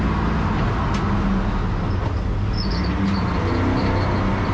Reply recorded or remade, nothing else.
recorded